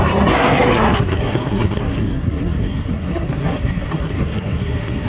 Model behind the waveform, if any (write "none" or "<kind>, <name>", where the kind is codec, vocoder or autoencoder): codec, SNAC